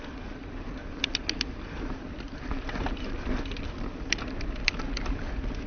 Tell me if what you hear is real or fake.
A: fake